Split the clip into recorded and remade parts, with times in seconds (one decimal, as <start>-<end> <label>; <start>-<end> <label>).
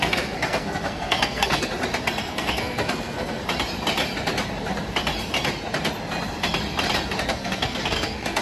0.0-1.7 remade; 1.7-2.2 recorded; 2.2-3.4 remade; 3.4-7.3 recorded; 7.3-8.4 remade